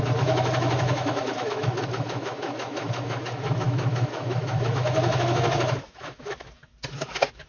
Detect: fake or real fake